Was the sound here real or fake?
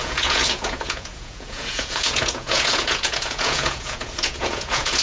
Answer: fake